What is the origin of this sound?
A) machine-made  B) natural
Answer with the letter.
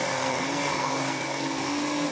A